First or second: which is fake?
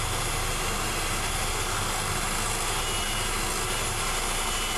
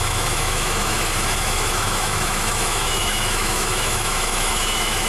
second